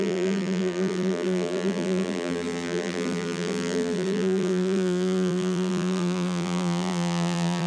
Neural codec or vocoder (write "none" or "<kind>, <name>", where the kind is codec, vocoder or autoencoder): vocoder, BigVGAN v2